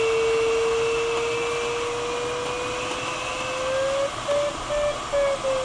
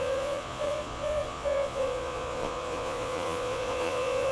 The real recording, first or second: first